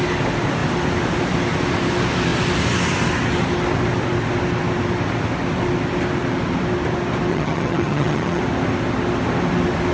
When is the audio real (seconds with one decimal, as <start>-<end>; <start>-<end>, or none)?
0.0-7.3; 8.4-9.9